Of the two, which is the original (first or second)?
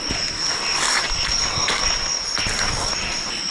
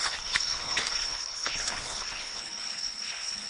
first